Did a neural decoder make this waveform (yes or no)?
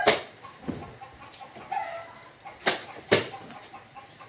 no